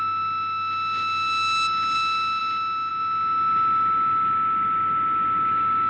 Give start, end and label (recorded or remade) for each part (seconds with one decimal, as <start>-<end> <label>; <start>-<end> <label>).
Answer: 0.0-5.9 recorded